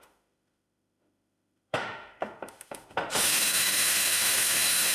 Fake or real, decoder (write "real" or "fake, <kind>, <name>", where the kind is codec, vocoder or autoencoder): fake, autoencoder, DAC-VAE